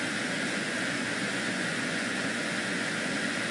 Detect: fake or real fake